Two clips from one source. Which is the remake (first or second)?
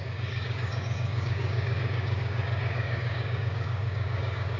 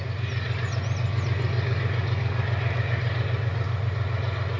first